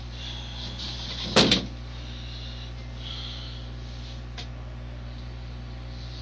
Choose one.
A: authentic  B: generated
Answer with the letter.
A